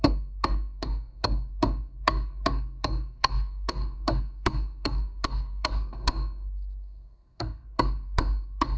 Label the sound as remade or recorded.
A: remade